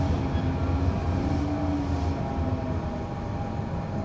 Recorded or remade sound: recorded